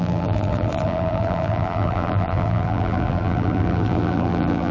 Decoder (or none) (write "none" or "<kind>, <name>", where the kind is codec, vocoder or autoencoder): vocoder, BigVGAN v2